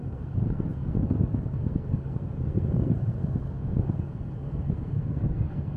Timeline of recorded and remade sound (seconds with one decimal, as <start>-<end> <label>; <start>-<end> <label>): 0.0-5.8 remade